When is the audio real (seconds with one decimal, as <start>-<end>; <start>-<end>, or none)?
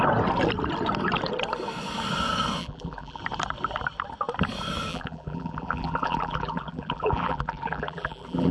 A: 0.0-2.6; 3.2-4.9